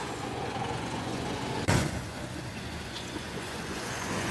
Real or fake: fake